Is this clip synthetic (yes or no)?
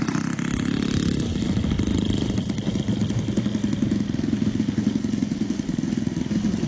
no